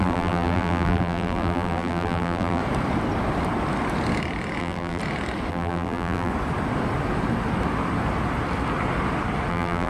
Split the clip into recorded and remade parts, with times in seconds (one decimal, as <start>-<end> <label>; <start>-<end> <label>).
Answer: 0.0-2.6 remade; 2.6-4.6 recorded; 4.6-5.0 remade; 5.0-5.5 recorded; 5.5-6.3 remade; 6.3-9.5 recorded; 9.5-9.9 remade